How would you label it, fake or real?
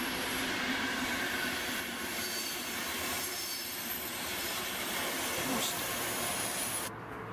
fake